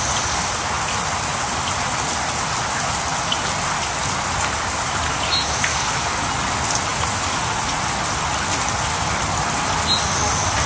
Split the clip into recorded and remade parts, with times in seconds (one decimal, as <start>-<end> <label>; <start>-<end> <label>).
0.0-6.9 recorded; 6.9-7.8 remade; 7.8-10.7 recorded